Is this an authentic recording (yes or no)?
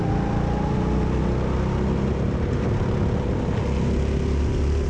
yes